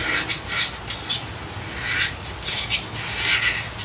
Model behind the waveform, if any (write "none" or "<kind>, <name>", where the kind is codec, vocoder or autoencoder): none